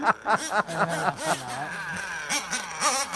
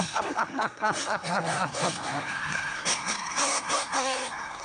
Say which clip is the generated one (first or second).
second